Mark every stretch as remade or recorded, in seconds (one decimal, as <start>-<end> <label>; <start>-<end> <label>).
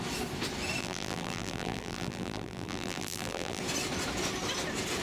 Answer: 0.0-0.8 recorded; 0.8-3.6 remade; 3.6-5.0 recorded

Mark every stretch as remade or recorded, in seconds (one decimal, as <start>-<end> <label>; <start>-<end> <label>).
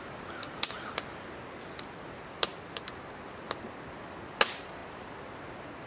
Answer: 0.0-4.8 recorded; 4.8-5.4 remade; 5.4-5.9 recorded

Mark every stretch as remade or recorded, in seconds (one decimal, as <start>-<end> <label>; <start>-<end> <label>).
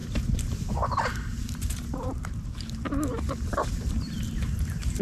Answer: 0.0-0.7 remade; 0.7-1.3 recorded; 1.3-2.3 remade; 2.3-3.6 recorded; 3.6-5.0 remade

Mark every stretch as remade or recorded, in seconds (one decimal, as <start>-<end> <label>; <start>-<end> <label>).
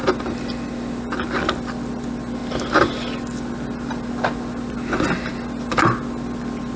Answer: 0.0-6.8 recorded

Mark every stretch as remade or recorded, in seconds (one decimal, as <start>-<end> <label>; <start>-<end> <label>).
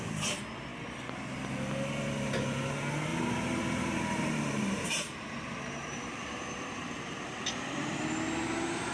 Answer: 0.0-3.1 recorded; 3.1-8.0 remade; 8.0-8.9 recorded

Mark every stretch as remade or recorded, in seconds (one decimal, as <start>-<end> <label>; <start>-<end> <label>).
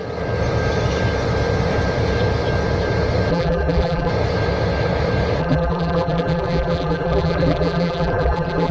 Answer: 0.0-3.3 recorded; 3.3-4.1 remade; 4.1-5.4 recorded; 5.4-8.7 remade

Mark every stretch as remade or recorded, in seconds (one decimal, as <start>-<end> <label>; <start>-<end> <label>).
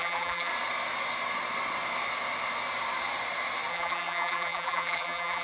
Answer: 0.0-0.5 remade; 0.5-3.7 recorded; 3.7-5.4 remade